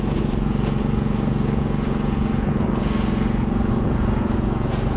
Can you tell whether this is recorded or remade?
remade